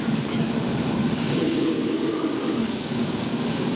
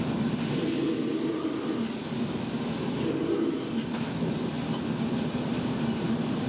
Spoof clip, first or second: first